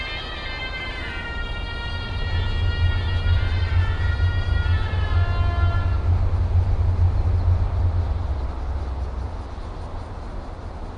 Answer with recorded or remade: recorded